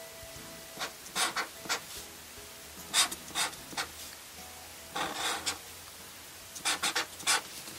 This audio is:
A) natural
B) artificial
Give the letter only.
A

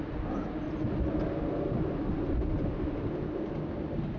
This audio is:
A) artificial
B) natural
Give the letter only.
B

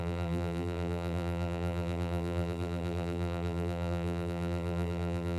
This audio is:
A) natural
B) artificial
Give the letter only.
B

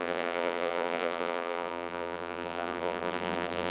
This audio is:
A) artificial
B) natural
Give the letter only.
A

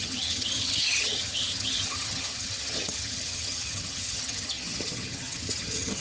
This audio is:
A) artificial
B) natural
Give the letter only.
A